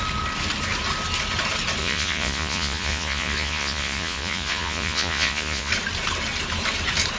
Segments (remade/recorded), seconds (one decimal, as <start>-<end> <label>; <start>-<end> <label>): 0.0-1.8 recorded; 1.8-5.7 remade; 5.7-7.2 recorded